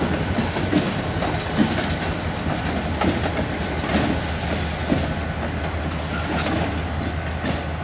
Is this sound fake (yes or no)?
no